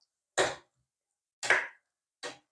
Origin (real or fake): real